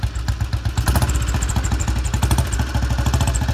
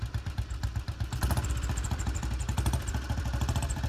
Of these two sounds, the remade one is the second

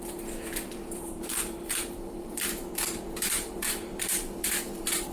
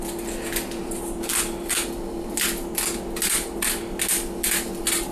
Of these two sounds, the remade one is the first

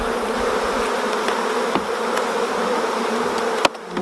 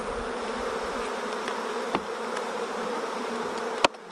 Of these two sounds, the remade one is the second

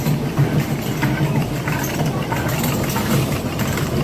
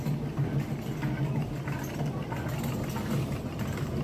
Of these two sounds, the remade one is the first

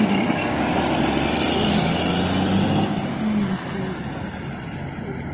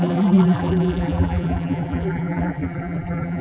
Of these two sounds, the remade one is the second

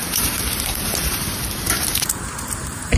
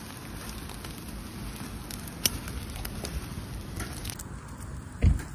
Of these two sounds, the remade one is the first